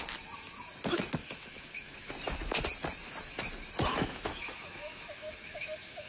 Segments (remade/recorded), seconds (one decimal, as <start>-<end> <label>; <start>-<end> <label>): 0.0-1.2 recorded; 1.2-2.1 remade; 2.1-3.9 recorded; 3.9-6.1 remade